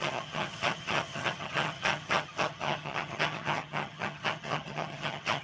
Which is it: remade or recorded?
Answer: remade